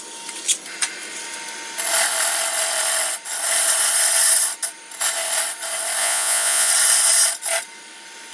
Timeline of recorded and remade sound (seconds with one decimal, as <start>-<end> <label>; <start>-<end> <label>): 0.0-6.0 recorded; 6.0-6.7 remade; 6.7-8.3 recorded

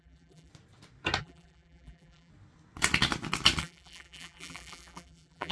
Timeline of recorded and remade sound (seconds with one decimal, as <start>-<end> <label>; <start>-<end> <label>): 0.0-0.5 remade; 0.5-1.2 recorded; 1.2-2.3 remade; 2.3-3.6 recorded; 3.6-5.5 remade

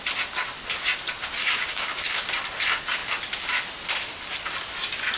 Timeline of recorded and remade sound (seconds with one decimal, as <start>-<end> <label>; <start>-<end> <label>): 0.0-1.4 recorded; 1.4-2.2 remade; 2.2-5.2 recorded

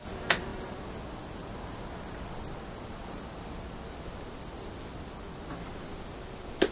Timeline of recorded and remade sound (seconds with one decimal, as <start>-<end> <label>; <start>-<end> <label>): 0.0-6.7 recorded